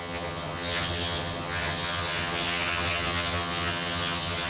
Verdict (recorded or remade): remade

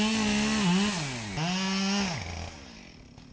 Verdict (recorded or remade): recorded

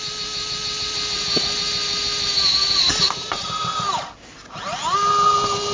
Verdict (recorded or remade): recorded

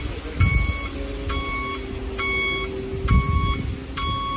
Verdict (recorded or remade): recorded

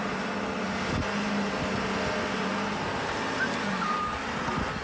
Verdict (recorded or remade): recorded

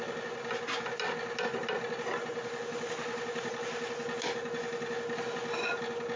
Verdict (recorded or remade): recorded